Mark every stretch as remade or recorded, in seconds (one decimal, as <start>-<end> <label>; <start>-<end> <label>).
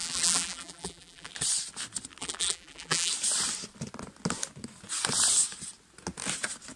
0.0-1.3 remade; 1.3-2.2 recorded; 2.2-3.1 remade; 3.1-6.8 recorded